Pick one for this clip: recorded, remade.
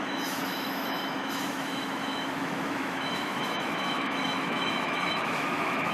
remade